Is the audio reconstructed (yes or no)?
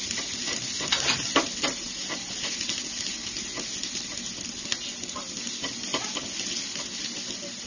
no